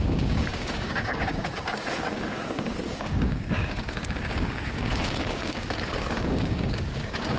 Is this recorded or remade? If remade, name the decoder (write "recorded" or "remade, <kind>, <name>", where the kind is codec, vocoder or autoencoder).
remade, codec, DAC